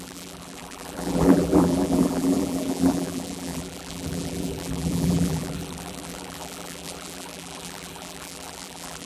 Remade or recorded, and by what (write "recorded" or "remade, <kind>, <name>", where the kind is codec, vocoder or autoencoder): remade, vocoder, BigVGAN v2